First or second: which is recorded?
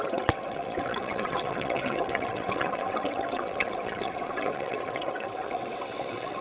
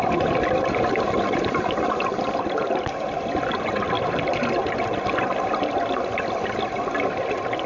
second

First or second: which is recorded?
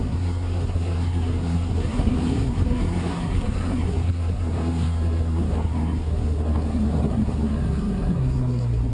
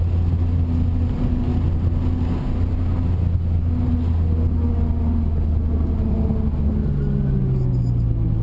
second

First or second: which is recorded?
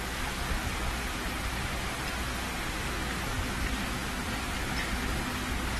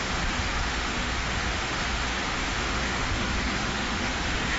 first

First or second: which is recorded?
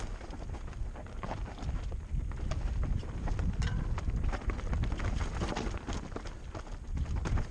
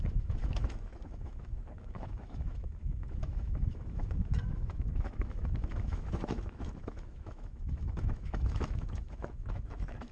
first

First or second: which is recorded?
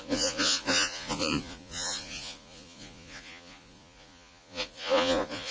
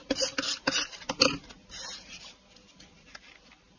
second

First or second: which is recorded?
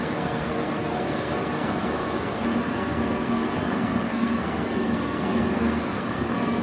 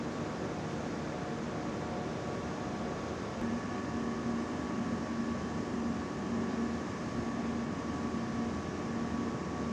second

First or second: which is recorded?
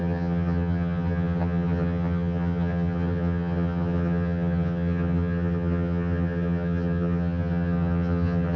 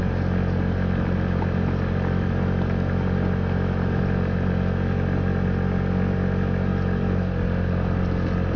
second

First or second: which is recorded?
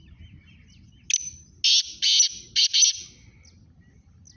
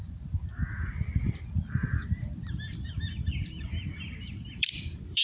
first